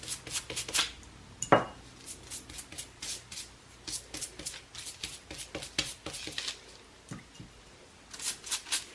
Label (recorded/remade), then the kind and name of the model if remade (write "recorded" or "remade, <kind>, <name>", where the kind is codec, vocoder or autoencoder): recorded